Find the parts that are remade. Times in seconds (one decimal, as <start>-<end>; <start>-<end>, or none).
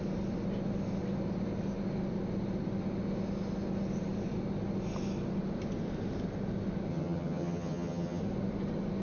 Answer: 6.9-8.2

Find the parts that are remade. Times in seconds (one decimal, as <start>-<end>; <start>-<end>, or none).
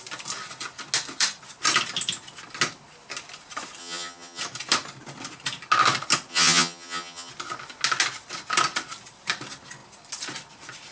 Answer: 3.8-4.4; 6.3-7.3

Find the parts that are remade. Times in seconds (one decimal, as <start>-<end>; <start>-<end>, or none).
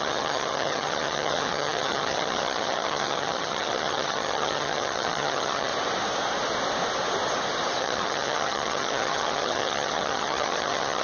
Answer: 0.0-5.7; 7.8-11.0